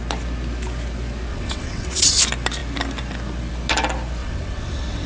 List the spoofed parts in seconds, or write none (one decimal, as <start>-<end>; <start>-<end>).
1.3-2.2; 4.2-5.1